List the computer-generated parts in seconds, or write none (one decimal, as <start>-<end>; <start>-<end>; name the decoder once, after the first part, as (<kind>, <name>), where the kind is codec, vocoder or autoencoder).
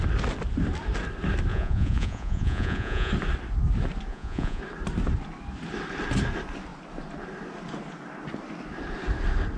1.5-3.1 (vocoder, Vocos); 4.1-4.6